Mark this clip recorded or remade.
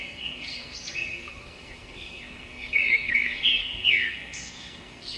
remade